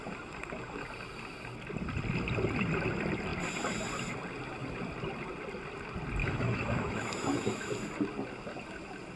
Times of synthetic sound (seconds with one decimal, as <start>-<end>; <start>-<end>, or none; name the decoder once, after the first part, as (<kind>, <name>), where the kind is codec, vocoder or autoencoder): 6.2-7.7 (autoencoder, DAC-VAE)